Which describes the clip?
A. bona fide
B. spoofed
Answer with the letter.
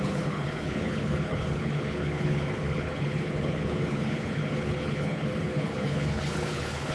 B